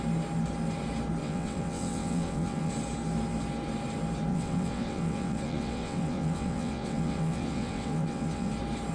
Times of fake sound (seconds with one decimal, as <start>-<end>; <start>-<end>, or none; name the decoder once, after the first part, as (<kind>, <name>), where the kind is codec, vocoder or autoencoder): 1.2-2.7 (vocoder, WaveNeXt); 4.3-8.5